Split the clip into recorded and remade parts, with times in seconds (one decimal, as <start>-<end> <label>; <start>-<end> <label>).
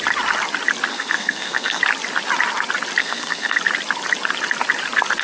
0.0-0.9 recorded; 0.9-1.8 remade; 1.8-3.0 recorded; 3.0-3.6 remade; 3.6-5.2 recorded